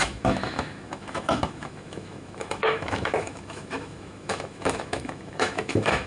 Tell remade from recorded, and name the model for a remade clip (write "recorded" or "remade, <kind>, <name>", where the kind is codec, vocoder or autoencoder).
remade, autoencoder, DAC-VAE